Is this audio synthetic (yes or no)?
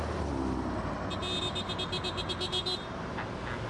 no